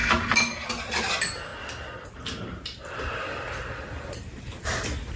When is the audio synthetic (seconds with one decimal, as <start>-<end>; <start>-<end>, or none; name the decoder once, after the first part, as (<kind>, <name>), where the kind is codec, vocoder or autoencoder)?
0.0-0.8 (vocoder, BigVGAN v2)